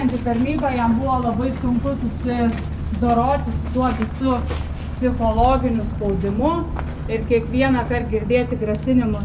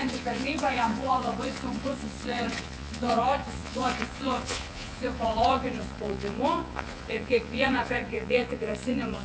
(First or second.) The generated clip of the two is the second